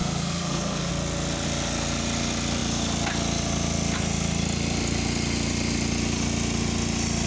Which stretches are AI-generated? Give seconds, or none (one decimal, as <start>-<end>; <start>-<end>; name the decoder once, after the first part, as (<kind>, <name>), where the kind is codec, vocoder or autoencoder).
0.0-0.9 (codec, SNAC)